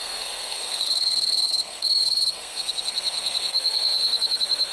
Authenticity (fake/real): fake